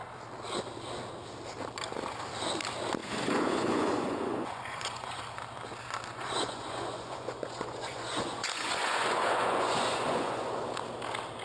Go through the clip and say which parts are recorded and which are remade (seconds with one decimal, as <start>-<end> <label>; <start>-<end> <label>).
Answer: 0.0-3.0 recorded; 3.0-5.2 remade; 5.2-6.1 recorded; 6.1-10.6 remade; 10.6-11.4 recorded